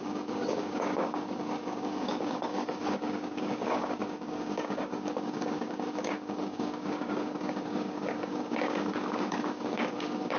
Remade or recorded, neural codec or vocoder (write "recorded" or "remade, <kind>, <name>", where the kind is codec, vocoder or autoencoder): remade, codec, DAC